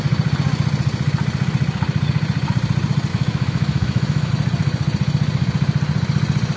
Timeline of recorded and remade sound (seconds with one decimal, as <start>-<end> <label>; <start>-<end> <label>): 0.0-3.1 recorded; 3.1-4.3 remade; 4.3-6.6 recorded